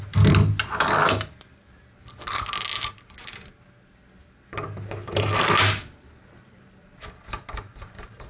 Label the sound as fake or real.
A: real